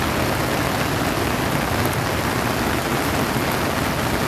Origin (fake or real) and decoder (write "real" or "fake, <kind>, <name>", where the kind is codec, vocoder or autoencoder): real